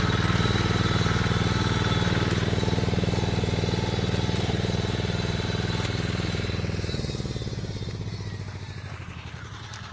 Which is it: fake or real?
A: real